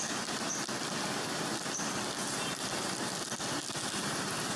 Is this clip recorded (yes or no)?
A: yes